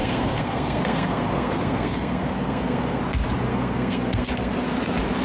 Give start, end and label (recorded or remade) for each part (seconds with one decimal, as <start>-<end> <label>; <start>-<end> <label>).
0.0-3.0 remade; 3.0-3.5 recorded; 3.5-4.5 remade; 4.5-5.2 recorded